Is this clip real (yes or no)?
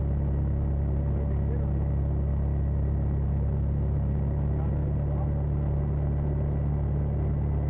yes